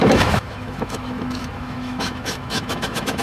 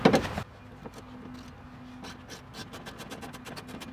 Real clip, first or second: second